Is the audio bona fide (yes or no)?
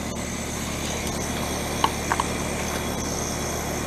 yes